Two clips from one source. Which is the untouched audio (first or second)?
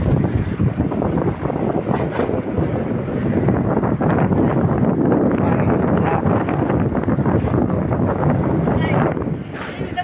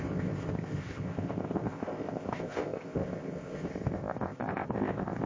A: first